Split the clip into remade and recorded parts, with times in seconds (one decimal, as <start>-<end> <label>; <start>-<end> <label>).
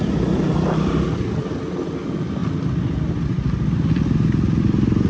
0.0-5.1 recorded